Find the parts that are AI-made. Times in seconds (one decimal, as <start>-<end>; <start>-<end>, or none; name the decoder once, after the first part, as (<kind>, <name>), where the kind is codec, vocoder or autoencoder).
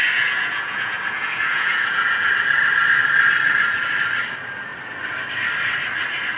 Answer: 0.0-2.3 (vocoder, Vocos)